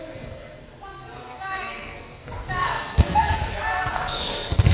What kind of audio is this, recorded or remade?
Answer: remade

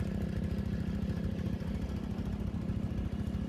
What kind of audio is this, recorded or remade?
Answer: recorded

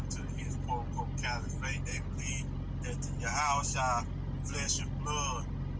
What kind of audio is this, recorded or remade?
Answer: recorded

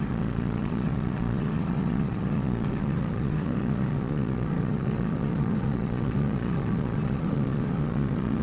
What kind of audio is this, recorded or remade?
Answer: remade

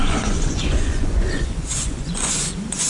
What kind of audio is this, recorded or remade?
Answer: remade